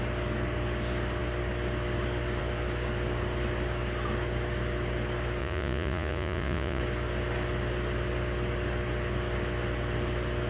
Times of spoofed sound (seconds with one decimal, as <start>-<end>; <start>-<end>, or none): 5.4-6.8